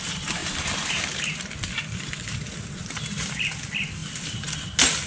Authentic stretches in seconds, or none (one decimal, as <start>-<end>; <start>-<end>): 0.0-5.1